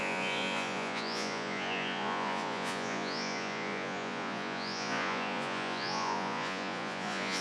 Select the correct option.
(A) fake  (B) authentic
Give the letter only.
A